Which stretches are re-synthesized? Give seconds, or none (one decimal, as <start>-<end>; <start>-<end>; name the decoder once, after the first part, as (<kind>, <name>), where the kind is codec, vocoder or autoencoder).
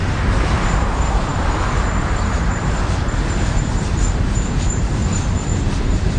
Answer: 0.0-1.3 (vocoder, BigVGAN v2); 2.2-5.0; 5.7-6.2